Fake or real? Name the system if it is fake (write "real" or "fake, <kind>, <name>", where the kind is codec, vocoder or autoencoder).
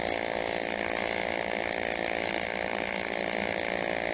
real